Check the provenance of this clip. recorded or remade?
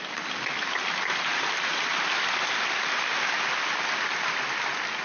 recorded